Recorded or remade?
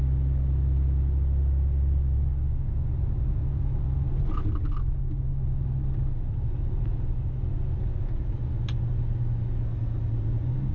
recorded